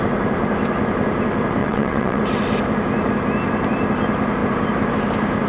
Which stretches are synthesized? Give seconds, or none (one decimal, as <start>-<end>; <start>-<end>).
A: 1.6-2.2